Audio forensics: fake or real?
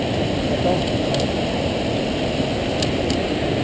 real